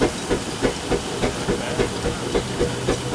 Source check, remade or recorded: recorded